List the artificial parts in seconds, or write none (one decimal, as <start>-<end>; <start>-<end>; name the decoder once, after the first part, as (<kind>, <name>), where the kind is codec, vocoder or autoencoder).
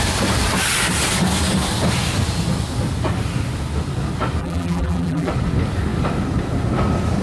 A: 4.4-5.3 (vocoder, BigVGAN v2)